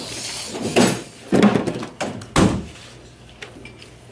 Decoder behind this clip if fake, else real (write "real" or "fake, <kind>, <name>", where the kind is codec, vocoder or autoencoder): real